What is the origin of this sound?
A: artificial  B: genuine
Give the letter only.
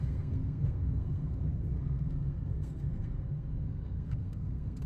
A